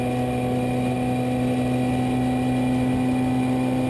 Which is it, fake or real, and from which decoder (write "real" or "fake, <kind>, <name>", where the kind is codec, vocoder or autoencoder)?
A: real